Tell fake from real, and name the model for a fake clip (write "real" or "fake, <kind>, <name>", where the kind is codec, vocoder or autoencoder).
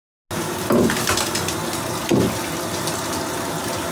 real